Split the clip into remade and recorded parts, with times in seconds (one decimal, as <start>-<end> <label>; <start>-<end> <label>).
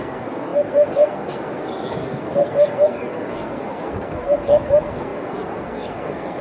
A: 0.0-6.4 remade